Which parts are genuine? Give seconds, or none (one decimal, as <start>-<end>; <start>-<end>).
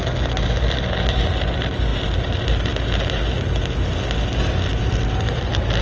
0.0-5.8